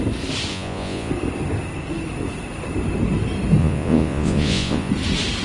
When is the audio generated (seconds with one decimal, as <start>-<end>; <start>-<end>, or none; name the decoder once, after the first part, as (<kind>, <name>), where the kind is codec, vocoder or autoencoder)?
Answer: 0.5-1.1 (vocoder, Vocos); 3.6-4.9